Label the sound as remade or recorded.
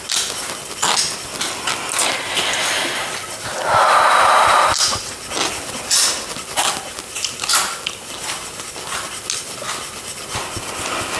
recorded